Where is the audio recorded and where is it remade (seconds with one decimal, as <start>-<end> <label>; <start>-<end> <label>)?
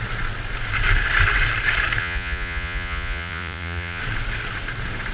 0.0-2.0 recorded; 2.0-4.0 remade; 4.0-5.1 recorded